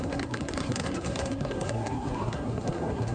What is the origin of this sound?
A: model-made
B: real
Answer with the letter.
A